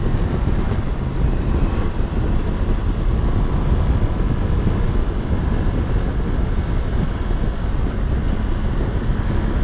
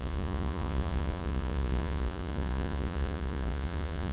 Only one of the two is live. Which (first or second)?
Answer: first